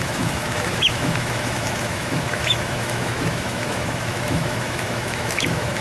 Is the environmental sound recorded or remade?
remade